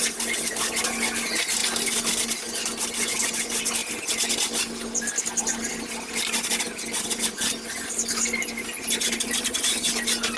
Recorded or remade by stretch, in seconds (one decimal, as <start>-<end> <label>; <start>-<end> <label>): 0.0-10.4 recorded